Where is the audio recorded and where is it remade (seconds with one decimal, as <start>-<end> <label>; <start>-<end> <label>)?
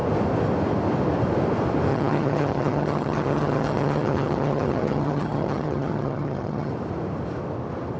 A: 0.0-1.9 recorded; 1.9-6.7 remade; 6.7-8.0 recorded